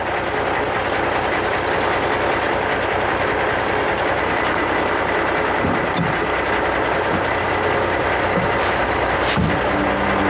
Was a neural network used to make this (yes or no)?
no